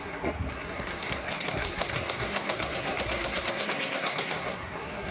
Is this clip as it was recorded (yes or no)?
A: no